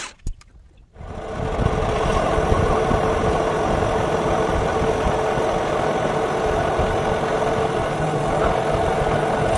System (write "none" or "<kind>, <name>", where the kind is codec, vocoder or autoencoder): none